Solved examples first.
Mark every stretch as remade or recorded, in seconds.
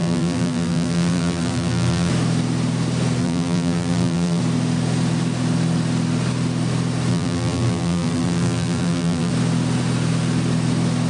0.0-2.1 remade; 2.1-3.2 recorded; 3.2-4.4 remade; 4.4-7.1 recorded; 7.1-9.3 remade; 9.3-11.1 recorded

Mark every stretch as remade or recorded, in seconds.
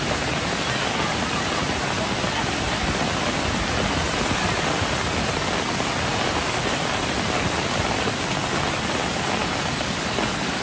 0.0-10.6 recorded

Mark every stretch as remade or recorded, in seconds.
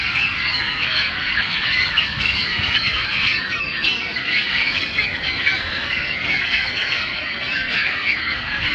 0.0-8.7 remade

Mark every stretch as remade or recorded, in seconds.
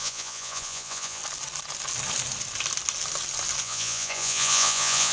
0.0-1.2 remade; 1.2-3.6 recorded; 3.6-5.1 remade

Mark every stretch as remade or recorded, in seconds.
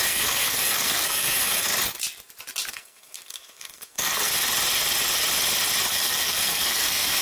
0.0-1.7 remade; 1.7-2.7 recorded; 2.7-4.3 remade; 4.3-5.9 recorded; 5.9-7.2 remade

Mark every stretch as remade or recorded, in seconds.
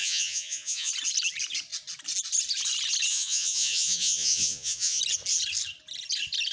0.0-0.9 remade; 0.9-3.1 recorded; 3.1-5.0 remade; 5.0-6.5 recorded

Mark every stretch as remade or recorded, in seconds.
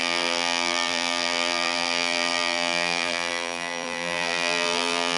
0.0-5.2 remade